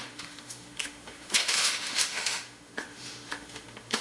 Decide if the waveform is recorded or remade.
remade